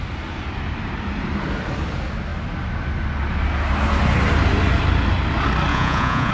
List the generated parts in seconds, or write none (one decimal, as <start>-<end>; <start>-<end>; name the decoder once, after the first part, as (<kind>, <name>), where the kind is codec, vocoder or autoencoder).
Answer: 5.7-6.3 (vocoder, Vocos)